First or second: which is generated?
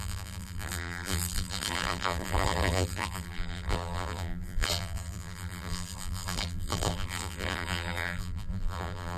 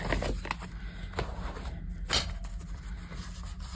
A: first